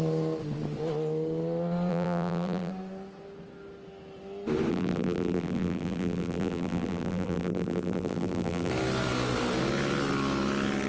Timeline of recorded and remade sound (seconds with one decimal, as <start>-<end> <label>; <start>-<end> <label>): 0.0-1.9 recorded; 1.9-2.7 remade; 2.7-4.7 recorded; 4.7-8.7 remade; 8.7-10.9 recorded